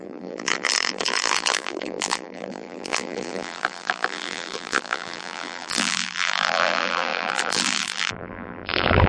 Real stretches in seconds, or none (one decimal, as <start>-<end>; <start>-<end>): none